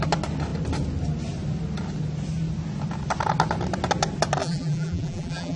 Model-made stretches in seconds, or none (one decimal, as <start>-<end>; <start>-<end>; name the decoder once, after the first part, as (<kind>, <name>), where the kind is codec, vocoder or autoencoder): 4.4-5.6 (vocoder, BigVGAN v2)